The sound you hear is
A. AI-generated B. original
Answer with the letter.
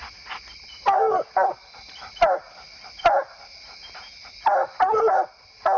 B